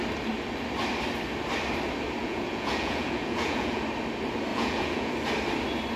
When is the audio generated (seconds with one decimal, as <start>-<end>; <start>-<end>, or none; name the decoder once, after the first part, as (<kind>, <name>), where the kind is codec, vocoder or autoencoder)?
2.2-3.8 (vocoder, Vocos); 4.5-5.1